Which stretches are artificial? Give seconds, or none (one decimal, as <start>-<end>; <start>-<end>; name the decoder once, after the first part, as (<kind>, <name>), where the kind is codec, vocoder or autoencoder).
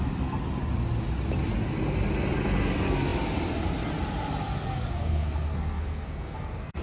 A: 4.9-6.8 (codec, SNAC)